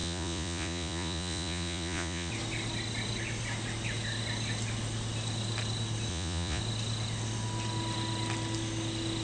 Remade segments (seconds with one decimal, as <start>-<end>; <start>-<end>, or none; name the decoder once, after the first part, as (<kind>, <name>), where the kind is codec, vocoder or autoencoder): 0.0-2.3 (vocoder, Vocos); 6.1-6.6